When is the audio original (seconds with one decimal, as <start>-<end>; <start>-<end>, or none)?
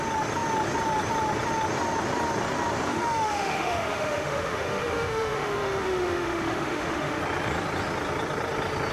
0.0-2.9; 7.2-8.9